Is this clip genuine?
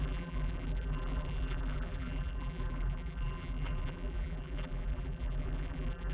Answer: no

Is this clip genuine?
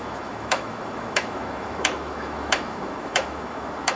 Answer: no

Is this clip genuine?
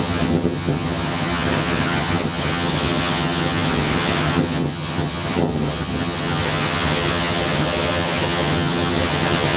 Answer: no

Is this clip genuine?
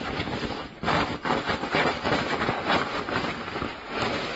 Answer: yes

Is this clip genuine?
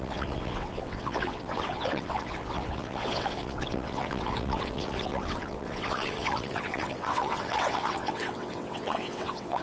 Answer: no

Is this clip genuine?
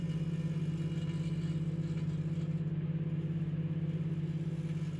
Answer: yes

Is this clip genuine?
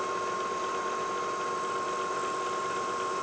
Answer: yes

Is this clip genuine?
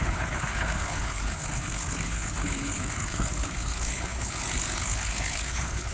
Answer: no